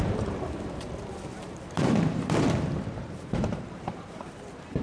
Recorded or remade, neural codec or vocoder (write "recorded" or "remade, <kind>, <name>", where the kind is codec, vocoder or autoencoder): remade, vocoder, BigVGAN v2